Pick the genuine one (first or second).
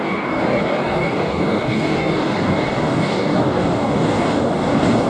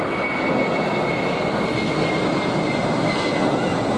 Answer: second